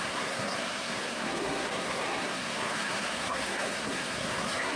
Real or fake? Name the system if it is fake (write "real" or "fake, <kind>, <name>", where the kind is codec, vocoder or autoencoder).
fake, codec, SNAC